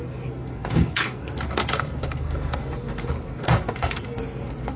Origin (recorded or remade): remade